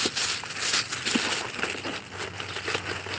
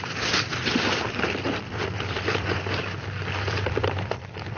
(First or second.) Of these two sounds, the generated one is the second